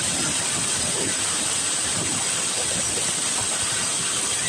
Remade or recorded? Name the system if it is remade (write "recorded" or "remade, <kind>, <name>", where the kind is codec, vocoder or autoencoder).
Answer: recorded